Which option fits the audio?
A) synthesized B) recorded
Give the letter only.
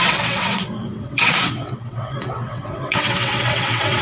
A